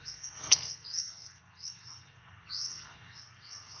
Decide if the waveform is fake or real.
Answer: fake